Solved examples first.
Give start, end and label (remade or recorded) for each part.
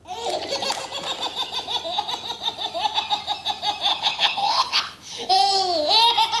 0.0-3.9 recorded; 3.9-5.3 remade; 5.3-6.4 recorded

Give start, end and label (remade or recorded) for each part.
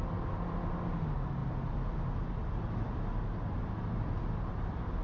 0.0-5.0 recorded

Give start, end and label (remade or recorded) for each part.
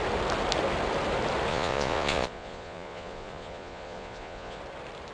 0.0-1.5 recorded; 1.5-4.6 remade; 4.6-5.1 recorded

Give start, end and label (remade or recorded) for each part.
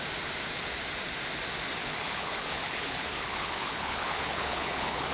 0.0-1.8 recorded; 1.8-5.1 remade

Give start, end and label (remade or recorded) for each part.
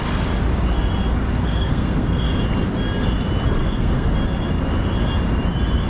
0.0-1.4 recorded; 1.4-2.4 remade; 2.4-3.6 recorded; 3.6-4.1 remade; 4.1-5.9 recorded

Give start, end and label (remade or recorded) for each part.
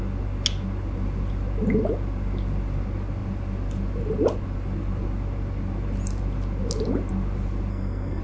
0.0-7.7 recorded; 7.7-8.2 remade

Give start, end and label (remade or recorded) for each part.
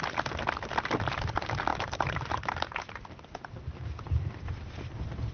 0.0-1.7 recorded; 1.7-2.8 remade; 2.8-5.3 recorded